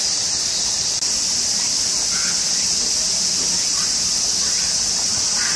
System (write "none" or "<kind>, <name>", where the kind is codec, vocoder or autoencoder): vocoder, BigVGAN v2